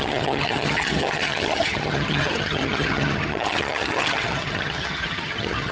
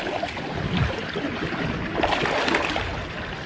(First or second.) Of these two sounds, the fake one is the first